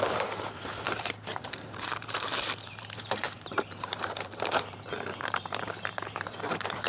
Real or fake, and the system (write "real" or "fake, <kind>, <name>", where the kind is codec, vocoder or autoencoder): fake, vocoder, BigVGAN v2